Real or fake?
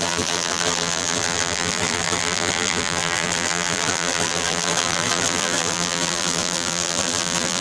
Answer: fake